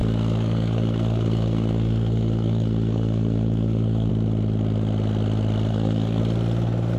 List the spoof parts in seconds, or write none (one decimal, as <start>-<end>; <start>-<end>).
0.0-4.1; 5.7-6.2